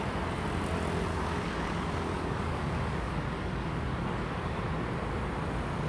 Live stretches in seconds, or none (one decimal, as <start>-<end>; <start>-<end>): 0.0-1.1; 4.6-5.9